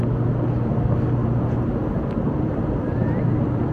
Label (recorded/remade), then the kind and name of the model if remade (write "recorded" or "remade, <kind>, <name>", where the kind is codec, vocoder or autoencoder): recorded